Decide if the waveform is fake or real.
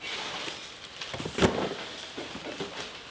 real